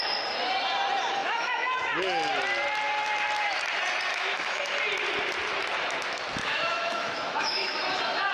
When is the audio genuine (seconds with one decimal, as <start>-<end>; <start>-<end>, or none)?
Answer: 0.0-1.2; 1.8-4.1; 4.6-6.4; 7.8-8.3